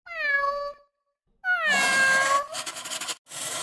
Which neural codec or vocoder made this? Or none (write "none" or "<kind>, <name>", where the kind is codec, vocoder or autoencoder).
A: none